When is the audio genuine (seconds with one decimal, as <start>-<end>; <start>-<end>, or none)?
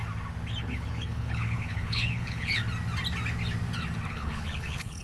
0.0-0.6; 2.6-4.1